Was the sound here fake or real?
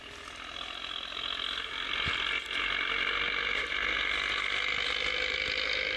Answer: real